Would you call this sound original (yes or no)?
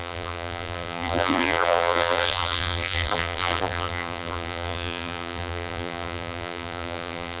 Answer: no